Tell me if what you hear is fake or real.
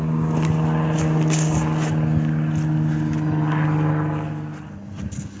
real